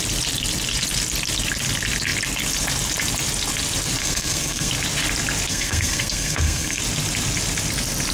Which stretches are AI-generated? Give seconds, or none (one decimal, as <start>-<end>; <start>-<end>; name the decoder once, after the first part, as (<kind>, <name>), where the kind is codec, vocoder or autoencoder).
4.0-4.7 (codec, SNAC); 5.5-6.8

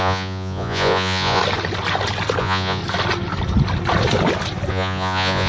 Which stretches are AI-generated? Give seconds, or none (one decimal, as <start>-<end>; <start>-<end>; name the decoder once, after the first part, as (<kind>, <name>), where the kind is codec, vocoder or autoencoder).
0.0-1.4 (vocoder, Vocos); 2.4-2.8; 4.7-5.5

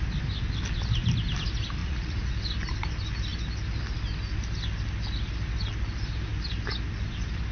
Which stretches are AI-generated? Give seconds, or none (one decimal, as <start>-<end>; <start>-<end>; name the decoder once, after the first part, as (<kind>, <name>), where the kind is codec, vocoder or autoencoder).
1.8-2.3 (vocoder, Vocos)

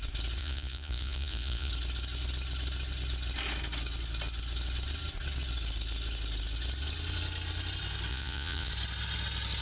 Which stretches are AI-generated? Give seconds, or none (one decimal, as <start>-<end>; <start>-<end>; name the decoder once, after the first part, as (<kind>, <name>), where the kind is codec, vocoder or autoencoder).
0.4-1.7 (vocoder, Vocos); 8.1-8.7

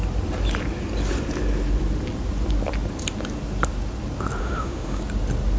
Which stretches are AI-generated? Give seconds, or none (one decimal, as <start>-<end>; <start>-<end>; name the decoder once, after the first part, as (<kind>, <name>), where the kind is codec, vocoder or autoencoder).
4.4-5.0 (autoencoder, DAC-VAE)

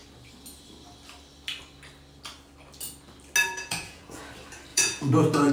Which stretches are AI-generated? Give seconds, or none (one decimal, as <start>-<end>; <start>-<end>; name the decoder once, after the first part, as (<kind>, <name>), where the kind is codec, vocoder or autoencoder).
3.4-4.2 (vocoder, Vocos); 4.7-5.5

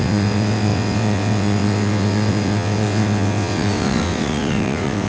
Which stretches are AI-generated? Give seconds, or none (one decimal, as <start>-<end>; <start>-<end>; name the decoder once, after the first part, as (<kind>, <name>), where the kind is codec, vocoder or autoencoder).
0.0-5.1 (vocoder, WaveNeXt)